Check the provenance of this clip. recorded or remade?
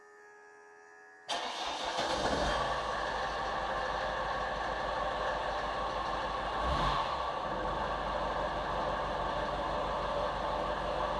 recorded